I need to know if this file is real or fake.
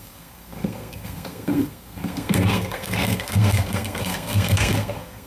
fake